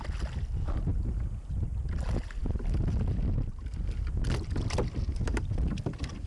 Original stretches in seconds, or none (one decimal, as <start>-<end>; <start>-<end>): 0.0-6.3